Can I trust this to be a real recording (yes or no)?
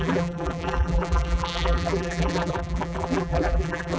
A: no